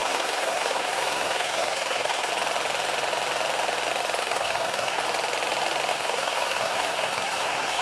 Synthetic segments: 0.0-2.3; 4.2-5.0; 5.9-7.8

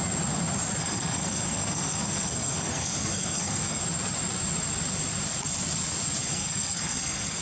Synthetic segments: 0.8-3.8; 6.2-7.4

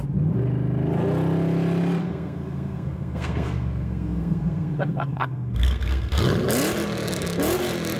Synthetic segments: 2.0-6.2

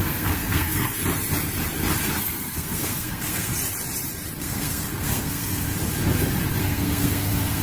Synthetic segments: 0.0-1.0; 2.1-3.5; 4.4-5.7; 6.6-7.6

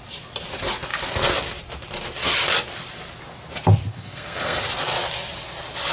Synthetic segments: 3.9-4.6

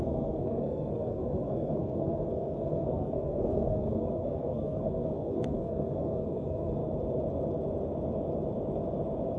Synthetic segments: 0.0-6.8

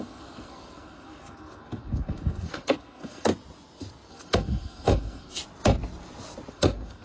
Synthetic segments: 0.0-3.3; 4.1-5.4; 6.5-7.0